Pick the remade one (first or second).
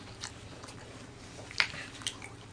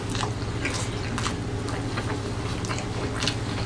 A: first